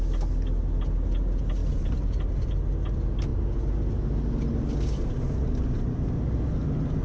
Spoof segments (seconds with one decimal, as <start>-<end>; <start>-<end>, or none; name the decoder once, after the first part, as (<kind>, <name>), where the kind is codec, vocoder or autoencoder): none